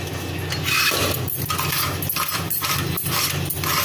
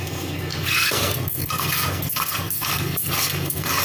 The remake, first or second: second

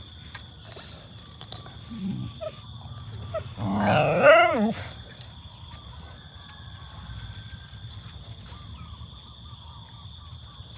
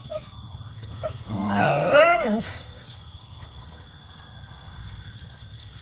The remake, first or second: second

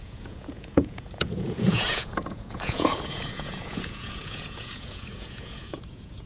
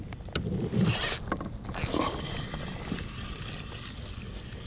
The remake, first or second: first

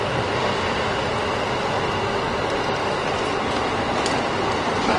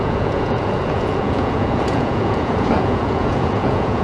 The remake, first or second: second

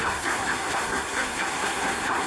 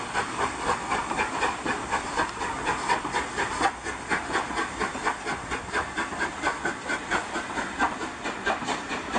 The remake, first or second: first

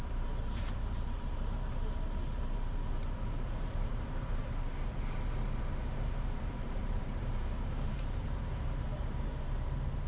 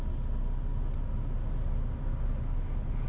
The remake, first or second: first